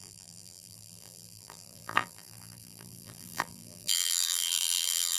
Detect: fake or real fake